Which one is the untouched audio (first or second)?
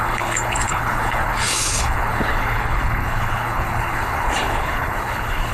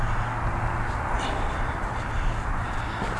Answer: second